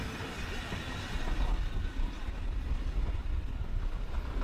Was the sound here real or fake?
real